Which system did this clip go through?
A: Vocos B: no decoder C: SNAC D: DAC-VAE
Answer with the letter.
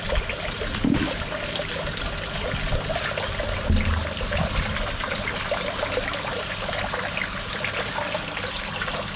B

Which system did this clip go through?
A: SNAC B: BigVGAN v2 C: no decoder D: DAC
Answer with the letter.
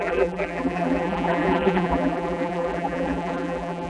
B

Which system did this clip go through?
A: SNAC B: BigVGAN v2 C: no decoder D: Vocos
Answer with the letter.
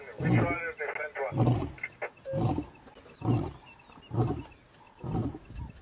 C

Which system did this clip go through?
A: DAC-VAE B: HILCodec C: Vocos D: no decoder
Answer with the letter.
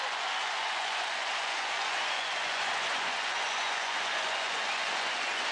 C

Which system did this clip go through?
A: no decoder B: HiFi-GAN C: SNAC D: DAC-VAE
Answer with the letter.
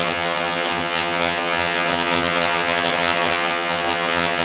B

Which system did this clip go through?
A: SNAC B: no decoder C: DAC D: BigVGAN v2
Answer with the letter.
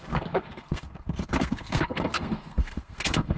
A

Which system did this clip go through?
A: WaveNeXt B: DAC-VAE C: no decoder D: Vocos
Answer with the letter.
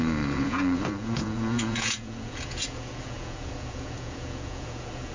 D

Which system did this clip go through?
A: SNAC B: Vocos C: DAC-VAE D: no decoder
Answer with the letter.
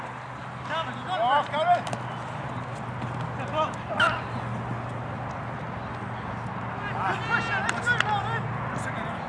D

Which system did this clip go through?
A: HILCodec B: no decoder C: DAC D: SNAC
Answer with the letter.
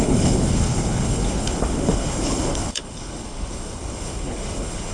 A